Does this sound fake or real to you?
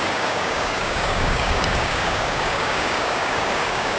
fake